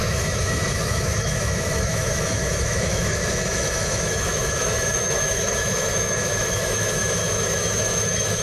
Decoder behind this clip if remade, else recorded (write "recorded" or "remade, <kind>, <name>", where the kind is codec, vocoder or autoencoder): remade, autoencoder, DAC-VAE